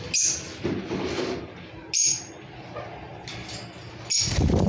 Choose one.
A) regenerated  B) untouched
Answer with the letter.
B